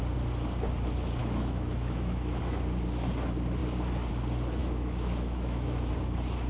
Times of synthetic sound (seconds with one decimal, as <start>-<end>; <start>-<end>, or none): 1.2-2.4; 4.6-5.9